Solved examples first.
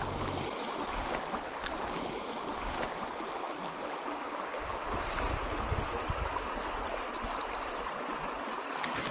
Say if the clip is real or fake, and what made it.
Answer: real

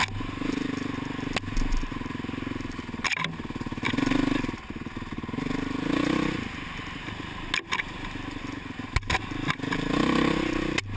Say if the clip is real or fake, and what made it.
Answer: real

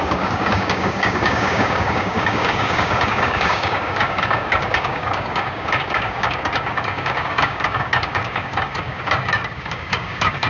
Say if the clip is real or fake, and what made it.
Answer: fake, codec, DAC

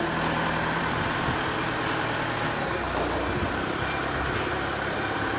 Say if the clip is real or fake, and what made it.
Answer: fake, vocoder, BigVGAN v2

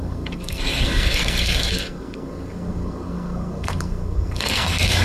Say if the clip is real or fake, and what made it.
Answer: fake, codec, SNAC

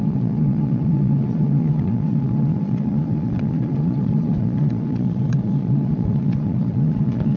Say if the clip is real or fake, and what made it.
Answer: fake, vocoder, Vocos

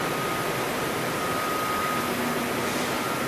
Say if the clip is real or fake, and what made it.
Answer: real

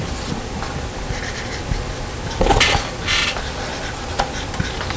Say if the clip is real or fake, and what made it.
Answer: real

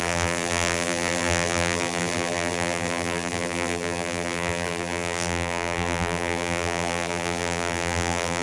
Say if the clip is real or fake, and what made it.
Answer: fake, vocoder, BigVGAN v2